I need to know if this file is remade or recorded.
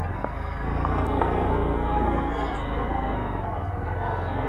remade